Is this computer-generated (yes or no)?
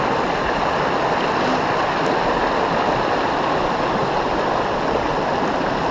no